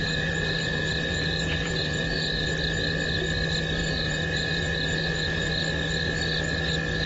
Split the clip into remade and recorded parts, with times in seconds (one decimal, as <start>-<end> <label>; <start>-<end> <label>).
0.0-2.5 remade; 2.5-3.8 recorded; 3.8-5.5 remade; 5.5-7.1 recorded